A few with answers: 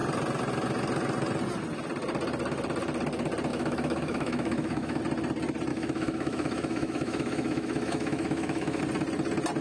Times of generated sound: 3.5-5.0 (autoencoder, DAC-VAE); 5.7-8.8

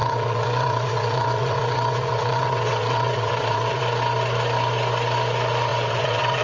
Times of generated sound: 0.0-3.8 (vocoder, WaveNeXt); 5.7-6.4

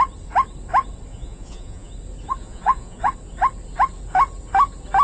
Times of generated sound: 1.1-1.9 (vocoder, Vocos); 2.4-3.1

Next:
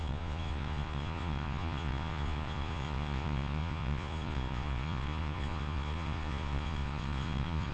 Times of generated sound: 0.0-7.7 (vocoder, Vocos)

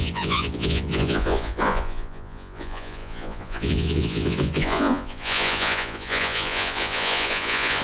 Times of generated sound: 0.0-7.8 (vocoder, Vocos)

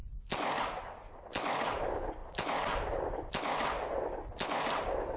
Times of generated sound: none